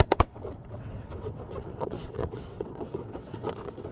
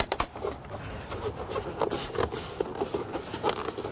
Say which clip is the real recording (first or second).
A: second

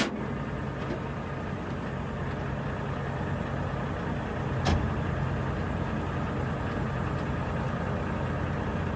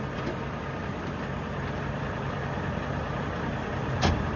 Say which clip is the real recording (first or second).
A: first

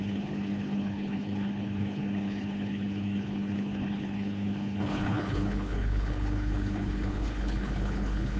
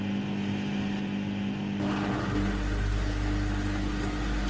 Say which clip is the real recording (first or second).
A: second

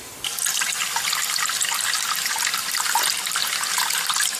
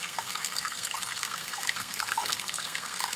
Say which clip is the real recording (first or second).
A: first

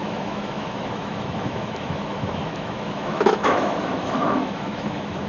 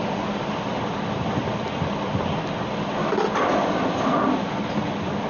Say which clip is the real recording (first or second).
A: second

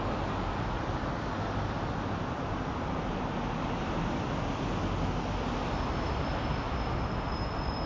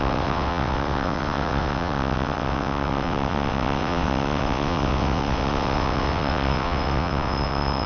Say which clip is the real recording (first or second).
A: first